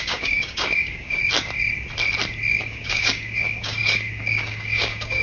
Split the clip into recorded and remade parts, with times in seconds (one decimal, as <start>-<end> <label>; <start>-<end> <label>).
0.0-1.2 remade; 1.2-2.5 recorded; 2.5-5.2 remade

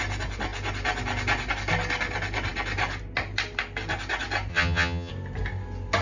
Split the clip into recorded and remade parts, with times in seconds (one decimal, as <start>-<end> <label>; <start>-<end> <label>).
0.0-4.5 recorded; 4.5-5.1 remade; 5.1-6.0 recorded

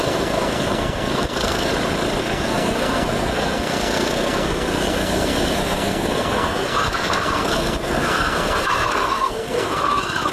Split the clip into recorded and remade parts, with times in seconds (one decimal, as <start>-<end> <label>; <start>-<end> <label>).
0.0-1.7 remade; 1.7-2.2 recorded; 2.2-10.3 remade

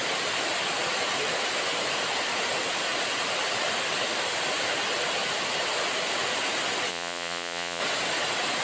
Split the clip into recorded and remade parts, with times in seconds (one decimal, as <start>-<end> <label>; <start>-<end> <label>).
0.0-6.9 recorded; 6.9-7.8 remade; 7.8-8.6 recorded

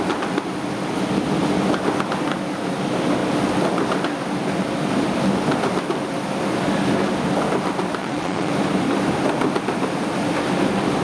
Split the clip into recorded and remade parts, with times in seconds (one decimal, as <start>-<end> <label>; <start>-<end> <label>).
0.0-8.0 recorded; 8.0-8.5 remade; 8.5-11.0 recorded